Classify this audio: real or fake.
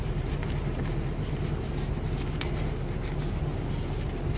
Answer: real